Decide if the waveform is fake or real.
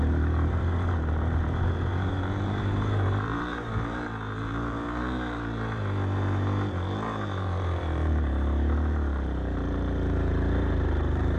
fake